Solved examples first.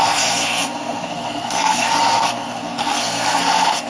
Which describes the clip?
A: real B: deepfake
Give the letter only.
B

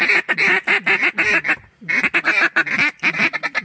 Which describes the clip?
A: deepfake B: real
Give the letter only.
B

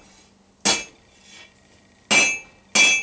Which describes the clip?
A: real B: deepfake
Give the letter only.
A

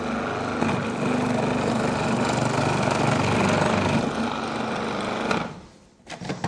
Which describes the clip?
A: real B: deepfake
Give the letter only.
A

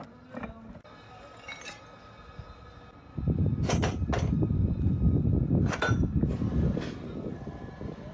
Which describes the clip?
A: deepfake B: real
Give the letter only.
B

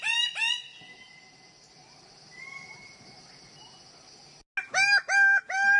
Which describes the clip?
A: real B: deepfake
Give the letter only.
A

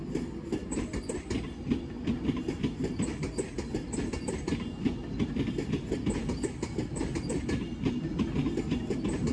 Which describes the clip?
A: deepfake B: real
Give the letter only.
B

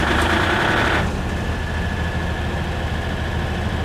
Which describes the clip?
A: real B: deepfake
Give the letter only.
A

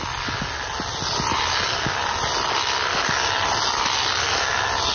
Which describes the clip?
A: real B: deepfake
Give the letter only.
A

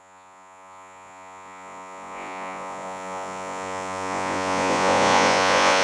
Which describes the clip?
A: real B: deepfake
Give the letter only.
B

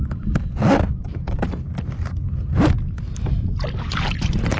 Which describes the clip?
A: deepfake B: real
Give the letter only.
B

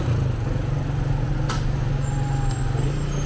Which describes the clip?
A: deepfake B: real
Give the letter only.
B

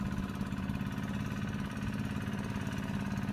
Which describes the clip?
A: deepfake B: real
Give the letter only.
B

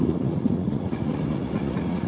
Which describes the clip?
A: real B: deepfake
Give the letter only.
B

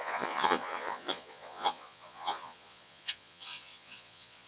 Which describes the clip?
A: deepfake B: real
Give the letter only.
A